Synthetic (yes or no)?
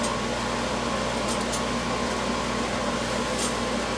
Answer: no